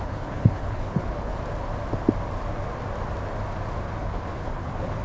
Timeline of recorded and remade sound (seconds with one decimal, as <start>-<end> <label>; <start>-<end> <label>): 0.0-1.3 remade; 1.3-3.8 recorded; 3.8-5.0 remade